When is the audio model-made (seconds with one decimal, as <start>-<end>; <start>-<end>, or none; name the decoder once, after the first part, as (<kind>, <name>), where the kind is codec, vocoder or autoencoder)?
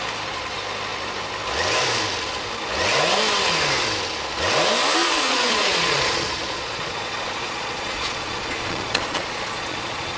5.0-10.2 (vocoder, Vocos)